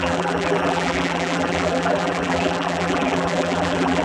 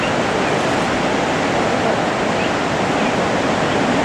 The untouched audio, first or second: second